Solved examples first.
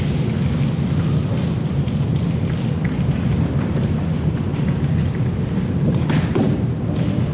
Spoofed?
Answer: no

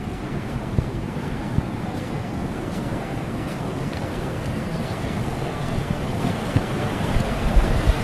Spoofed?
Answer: yes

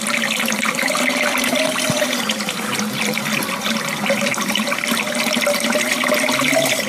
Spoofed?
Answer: no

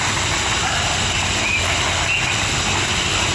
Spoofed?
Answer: no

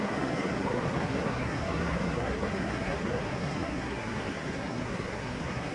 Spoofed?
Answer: yes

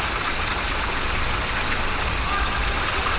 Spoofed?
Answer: no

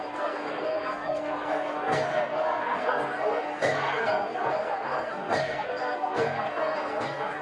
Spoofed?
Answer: yes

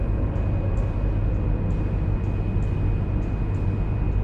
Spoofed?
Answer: no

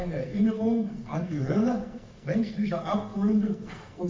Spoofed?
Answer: yes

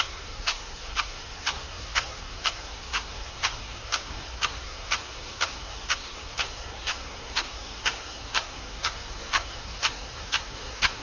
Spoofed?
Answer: yes